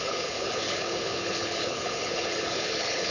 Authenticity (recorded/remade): remade